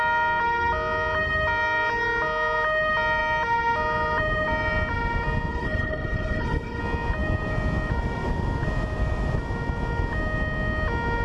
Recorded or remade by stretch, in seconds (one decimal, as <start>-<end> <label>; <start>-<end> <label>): 0.0-5.5 recorded; 5.5-6.8 remade; 6.8-11.2 recorded